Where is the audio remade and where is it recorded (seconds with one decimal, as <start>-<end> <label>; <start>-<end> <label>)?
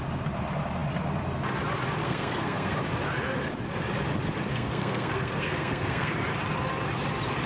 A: 0.0-2.0 recorded; 2.0-2.7 remade; 2.7-4.5 recorded; 4.5-6.1 remade; 6.1-7.5 recorded